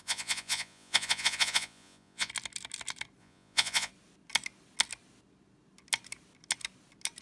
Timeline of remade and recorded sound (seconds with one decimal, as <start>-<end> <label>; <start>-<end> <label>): 0.0-2.3 remade; 2.3-3.2 recorded; 3.2-3.9 remade; 3.9-7.2 recorded